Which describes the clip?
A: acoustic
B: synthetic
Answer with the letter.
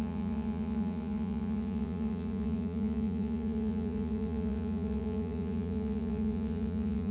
B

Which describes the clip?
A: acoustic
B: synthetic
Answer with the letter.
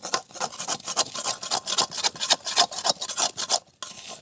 A